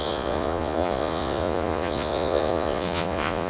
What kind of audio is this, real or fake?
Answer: fake